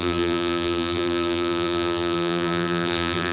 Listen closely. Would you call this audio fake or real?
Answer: fake